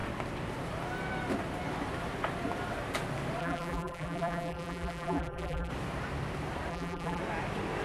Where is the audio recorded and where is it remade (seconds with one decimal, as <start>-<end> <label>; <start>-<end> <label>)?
0.0-3.4 recorded; 3.4-5.7 remade; 5.7-6.7 recorded; 6.7-7.2 remade; 7.2-7.8 recorded